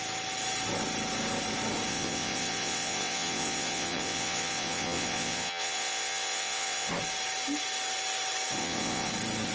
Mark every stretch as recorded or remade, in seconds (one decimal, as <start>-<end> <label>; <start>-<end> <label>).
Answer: 0.0-1.9 recorded; 1.9-6.9 remade; 6.9-8.6 recorded; 8.6-9.1 remade; 9.1-9.5 recorded

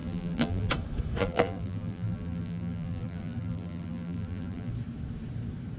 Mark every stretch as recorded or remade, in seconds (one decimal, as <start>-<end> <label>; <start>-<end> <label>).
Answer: 0.0-0.7 remade; 0.7-1.2 recorded; 1.2-4.7 remade; 4.7-5.8 recorded

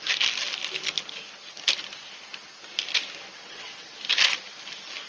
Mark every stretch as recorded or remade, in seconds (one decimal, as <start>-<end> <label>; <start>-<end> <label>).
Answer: 0.0-3.3 recorded; 3.3-3.9 remade; 3.9-5.1 recorded